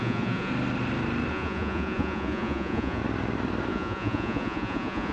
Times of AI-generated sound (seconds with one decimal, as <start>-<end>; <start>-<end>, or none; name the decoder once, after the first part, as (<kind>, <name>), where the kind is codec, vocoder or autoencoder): 0.0-0.5 (vocoder, Vocos); 1.3-3.0; 3.7-5.1